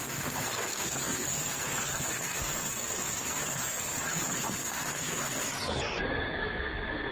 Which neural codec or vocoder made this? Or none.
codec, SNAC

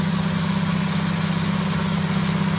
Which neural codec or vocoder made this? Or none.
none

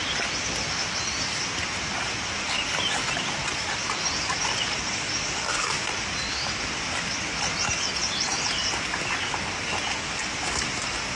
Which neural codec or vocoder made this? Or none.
none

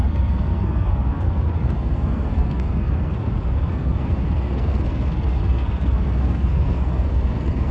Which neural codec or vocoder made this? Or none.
codec, SNAC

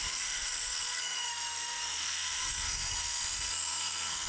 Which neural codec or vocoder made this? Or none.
codec, SNAC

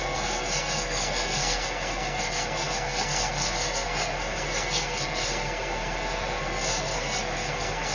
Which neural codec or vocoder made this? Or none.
codec, SNAC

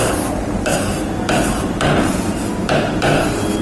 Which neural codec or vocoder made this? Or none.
none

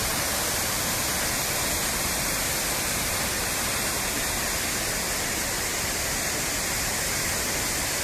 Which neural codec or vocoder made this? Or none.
none